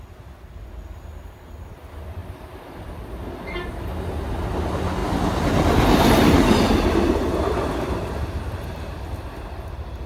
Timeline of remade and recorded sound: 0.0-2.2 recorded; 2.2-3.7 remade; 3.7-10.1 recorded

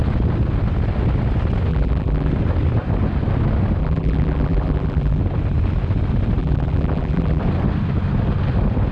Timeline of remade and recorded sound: 0.0-1.7 recorded; 1.7-2.3 remade; 2.3-3.8 recorded; 3.8-5.2 remade; 5.2-6.4 recorded; 6.4-7.4 remade; 7.4-8.9 recorded

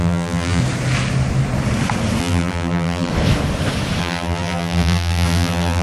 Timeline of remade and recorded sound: 0.0-0.6 remade; 0.6-2.2 recorded; 2.2-3.1 remade; 3.1-4.0 recorded; 4.0-5.8 remade

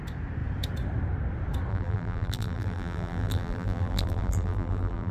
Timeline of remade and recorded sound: 0.0-1.7 recorded; 1.7-5.1 remade

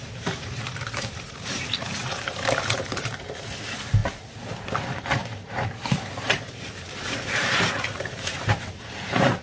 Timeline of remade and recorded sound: 0.0-4.0 remade; 4.0-4.9 recorded; 4.9-9.4 remade